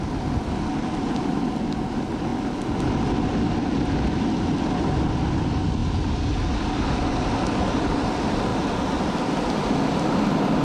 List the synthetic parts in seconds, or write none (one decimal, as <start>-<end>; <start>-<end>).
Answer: 8.5-10.0

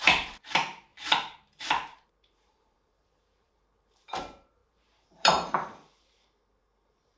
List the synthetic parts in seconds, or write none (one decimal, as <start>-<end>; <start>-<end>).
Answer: 0.0-7.2

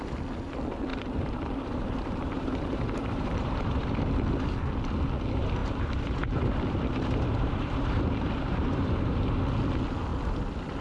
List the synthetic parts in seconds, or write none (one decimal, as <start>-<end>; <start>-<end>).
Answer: 0.9-4.0; 5.6-9.4

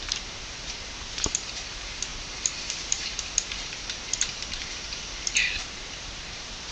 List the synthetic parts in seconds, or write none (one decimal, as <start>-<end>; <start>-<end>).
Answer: 0.0-6.7

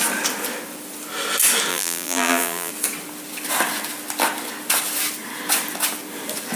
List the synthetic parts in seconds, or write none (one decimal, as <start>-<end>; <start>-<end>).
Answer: 1.7-2.7

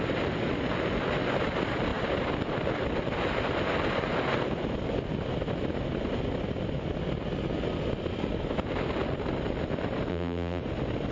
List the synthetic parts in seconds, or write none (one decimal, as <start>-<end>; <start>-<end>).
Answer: 10.1-10.6

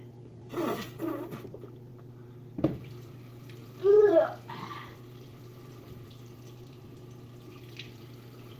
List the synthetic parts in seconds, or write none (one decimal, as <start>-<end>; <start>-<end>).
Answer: 0.0-1.9; 2.5-8.6

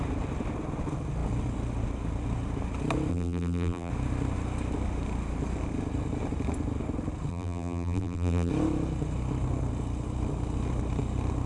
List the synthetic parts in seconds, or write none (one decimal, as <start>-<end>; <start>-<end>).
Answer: 3.1-3.9; 7.3-8.5